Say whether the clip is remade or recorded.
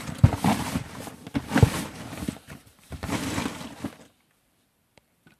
remade